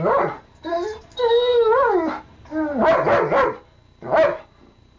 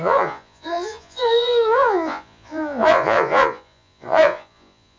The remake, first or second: second